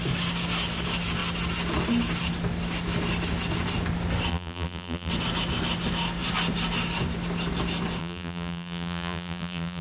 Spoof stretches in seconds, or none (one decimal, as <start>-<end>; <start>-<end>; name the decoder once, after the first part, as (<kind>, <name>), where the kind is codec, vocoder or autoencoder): 4.3-5.1 (vocoder, BigVGAN v2); 8.0-9.8